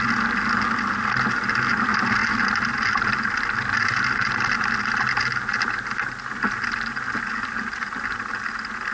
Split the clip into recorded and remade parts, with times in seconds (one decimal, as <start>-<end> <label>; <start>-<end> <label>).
0.0-8.9 recorded